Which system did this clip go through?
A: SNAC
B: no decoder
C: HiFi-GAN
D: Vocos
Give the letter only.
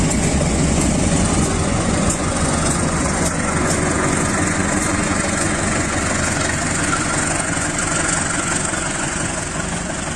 D